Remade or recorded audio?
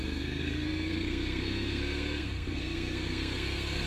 remade